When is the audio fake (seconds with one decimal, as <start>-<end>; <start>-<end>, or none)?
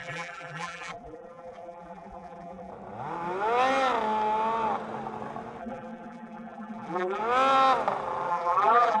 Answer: 0.0-2.7; 5.6-7.2; 8.3-9.0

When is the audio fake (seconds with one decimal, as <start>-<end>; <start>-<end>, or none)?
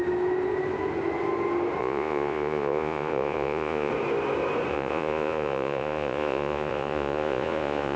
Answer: 1.8-3.9; 4.7-8.0